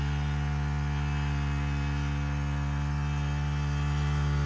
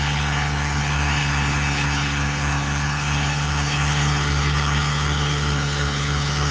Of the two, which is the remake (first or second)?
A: second